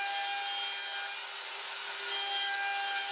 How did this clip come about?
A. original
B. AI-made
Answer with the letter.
A